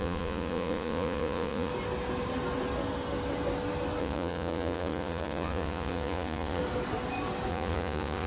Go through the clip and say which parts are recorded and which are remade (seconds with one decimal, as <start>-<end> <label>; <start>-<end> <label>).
0.0-1.7 remade; 1.7-4.0 recorded; 4.0-6.6 remade; 6.6-7.5 recorded; 7.5-8.3 remade